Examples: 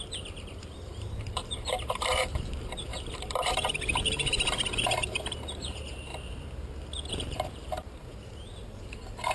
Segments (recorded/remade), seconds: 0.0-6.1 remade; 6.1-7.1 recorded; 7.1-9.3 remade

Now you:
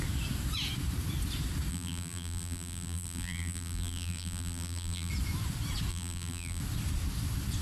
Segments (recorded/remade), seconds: 0.0-1.7 recorded; 1.7-5.1 remade; 5.1-5.9 recorded; 5.9-6.6 remade; 6.6-7.6 recorded